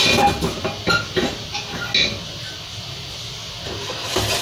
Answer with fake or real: real